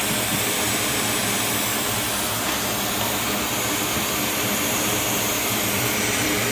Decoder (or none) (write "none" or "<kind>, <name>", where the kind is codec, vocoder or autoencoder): vocoder, BigVGAN v2